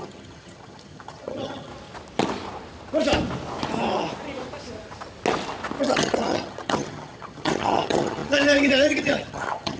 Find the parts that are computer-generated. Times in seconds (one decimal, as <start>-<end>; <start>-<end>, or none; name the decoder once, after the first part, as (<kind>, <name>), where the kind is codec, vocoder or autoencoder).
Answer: 0.0-1.7 (vocoder, HiFi-GAN); 5.8-9.8

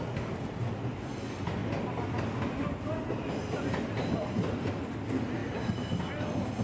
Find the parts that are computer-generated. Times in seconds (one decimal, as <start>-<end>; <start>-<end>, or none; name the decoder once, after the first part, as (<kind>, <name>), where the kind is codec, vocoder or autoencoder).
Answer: none

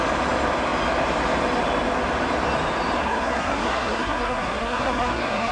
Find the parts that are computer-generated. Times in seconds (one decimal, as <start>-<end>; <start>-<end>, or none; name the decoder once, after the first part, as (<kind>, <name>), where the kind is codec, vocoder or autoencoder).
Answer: 3.0-5.5 (codec, SNAC)